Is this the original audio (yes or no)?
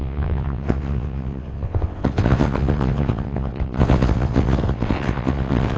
no